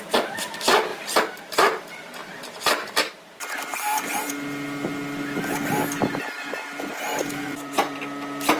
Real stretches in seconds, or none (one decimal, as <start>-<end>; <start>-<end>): 0.0-0.9; 1.4-2.2; 2.9-3.7; 4.3-7.1; 8.0-8.6